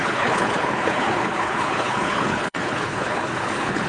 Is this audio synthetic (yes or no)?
yes